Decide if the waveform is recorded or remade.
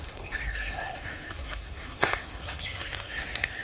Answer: remade